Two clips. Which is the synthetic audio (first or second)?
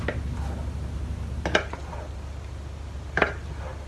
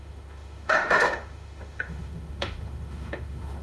second